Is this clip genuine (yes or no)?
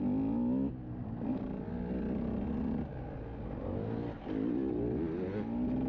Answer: yes